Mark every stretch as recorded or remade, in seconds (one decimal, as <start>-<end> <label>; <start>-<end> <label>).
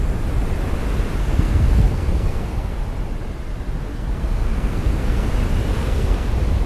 0.0-1.2 recorded; 1.2-2.8 remade; 2.8-3.9 recorded; 3.9-5.3 remade; 5.3-5.7 recorded; 5.7-6.3 remade; 6.3-6.7 recorded